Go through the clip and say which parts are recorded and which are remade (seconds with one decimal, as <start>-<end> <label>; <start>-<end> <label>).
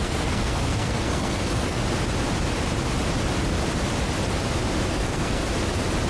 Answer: 0.0-1.8 remade; 1.8-4.9 recorded; 4.9-5.4 remade; 5.4-6.1 recorded